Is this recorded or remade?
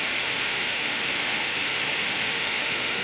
remade